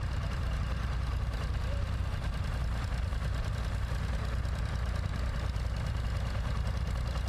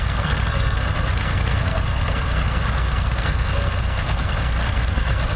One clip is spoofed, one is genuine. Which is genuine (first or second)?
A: first